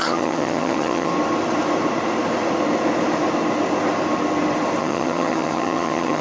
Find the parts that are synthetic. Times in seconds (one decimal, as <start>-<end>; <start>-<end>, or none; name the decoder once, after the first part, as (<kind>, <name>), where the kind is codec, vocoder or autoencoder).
0.0-1.1 (vocoder, HiFi-GAN); 4.8-6.2

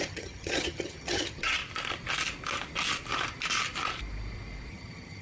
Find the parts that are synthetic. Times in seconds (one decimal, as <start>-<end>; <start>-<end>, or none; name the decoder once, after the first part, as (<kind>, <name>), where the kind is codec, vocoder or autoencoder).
0.0-1.6 (vocoder, HiFi-GAN); 4.7-5.2

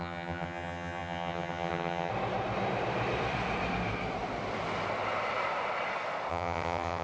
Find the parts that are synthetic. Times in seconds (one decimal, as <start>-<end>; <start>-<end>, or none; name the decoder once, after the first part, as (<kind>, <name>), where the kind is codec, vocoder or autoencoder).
0.0-2.1 (vocoder, HiFi-GAN); 6.3-7.0

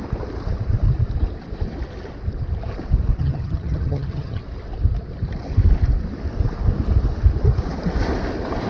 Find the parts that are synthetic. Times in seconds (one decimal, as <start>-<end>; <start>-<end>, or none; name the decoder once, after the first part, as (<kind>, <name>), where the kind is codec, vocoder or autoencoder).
3.2-4.4 (vocoder, HiFi-GAN)

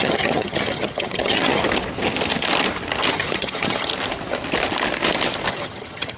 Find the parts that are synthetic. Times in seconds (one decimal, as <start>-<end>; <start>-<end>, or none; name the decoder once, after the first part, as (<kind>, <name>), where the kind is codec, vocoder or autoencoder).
0.0-1.6 (vocoder, HiFi-GAN); 3.1-3.9; 5.5-6.2

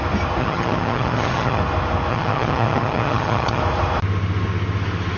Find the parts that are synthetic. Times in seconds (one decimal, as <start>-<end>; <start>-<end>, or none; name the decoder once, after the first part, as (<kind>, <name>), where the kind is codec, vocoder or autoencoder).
0.4-1.6 (vocoder, HiFi-GAN); 2.1-3.6

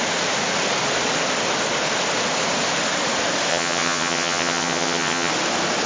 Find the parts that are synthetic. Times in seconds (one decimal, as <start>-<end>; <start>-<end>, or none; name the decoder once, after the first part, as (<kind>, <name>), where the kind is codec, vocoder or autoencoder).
3.5-5.3 (vocoder, HiFi-GAN)